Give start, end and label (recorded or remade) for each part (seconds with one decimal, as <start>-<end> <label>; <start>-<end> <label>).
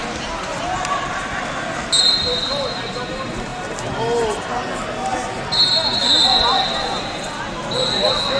0.0-8.4 recorded